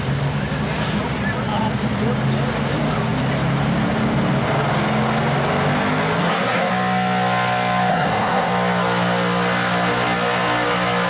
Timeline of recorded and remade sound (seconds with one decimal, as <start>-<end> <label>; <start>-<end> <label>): 0.0-6.2 recorded; 6.2-6.7 remade; 6.7-7.9 recorded; 7.9-8.5 remade; 8.5-11.1 recorded